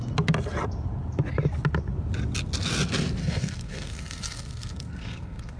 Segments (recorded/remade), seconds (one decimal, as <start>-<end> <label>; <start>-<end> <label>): 0.0-3.2 recorded; 3.2-5.6 remade